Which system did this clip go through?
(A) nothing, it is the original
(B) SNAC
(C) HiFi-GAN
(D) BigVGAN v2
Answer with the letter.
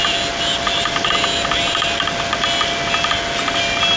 A